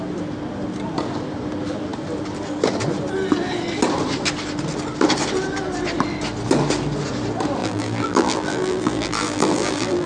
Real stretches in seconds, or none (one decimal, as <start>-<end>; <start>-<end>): 0.0-7.6